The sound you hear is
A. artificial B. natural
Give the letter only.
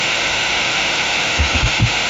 A